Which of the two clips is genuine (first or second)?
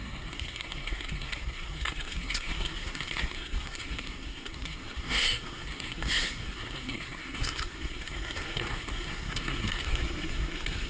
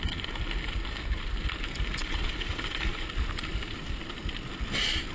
second